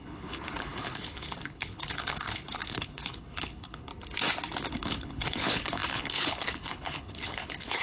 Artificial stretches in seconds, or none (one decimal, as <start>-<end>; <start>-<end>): 0.0-3.9; 4.7-7.8